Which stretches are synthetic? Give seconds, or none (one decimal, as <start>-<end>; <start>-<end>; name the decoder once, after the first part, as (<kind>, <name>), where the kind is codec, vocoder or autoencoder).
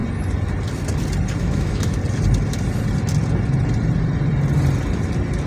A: 1.4-2.0 (autoencoder, DAC-VAE)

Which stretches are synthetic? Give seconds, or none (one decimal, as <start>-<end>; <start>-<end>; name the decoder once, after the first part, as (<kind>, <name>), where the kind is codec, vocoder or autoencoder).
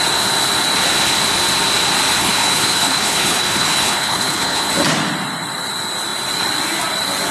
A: 2.2-4.7 (codec, HILCodec)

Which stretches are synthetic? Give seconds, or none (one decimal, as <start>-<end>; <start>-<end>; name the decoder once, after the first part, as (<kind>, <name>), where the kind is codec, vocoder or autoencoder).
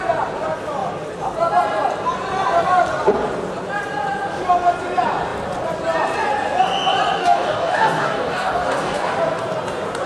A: 7.2-9.1 (codec, DAC)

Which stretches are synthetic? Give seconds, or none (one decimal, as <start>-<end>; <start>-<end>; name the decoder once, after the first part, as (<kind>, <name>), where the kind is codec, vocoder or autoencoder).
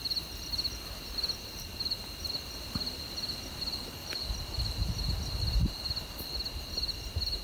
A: 0.7-2.3 (vocoder, BigVGAN v2)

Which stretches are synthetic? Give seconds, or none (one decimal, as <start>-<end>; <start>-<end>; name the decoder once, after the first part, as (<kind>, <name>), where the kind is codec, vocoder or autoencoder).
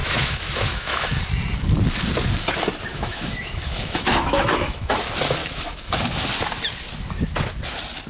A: 0.0-1.2 (autoencoder, DAC-VAE); 2.9-5.0; 5.4-5.9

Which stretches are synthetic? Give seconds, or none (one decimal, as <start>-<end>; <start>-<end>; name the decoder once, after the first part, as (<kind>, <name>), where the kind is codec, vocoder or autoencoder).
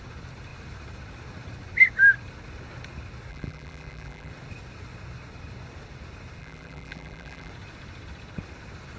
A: 3.3-4.3 (vocoder, BigVGAN v2); 6.4-7.5